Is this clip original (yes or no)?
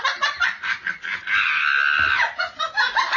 yes